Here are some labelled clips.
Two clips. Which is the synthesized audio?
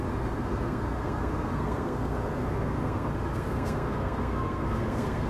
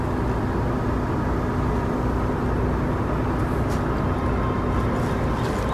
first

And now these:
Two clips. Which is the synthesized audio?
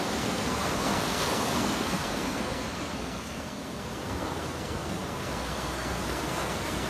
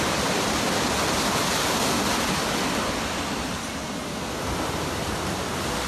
first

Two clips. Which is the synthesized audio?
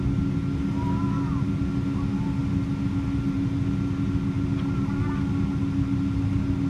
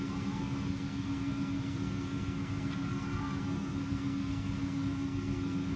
second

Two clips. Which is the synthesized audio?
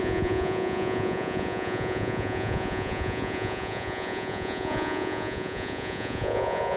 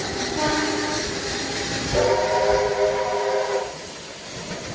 first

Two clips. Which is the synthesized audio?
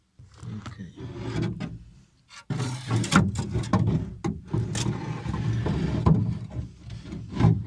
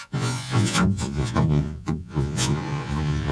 second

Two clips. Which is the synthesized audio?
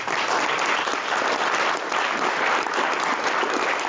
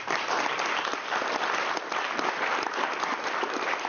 second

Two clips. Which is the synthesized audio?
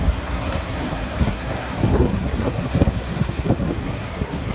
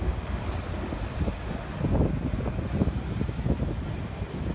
first